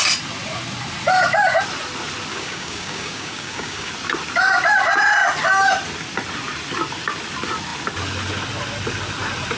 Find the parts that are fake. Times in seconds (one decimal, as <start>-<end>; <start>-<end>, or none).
2.3-3.9